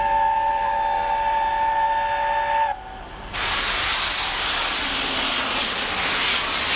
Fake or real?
real